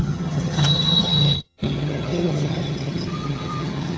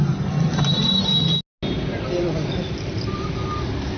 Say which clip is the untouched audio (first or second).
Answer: second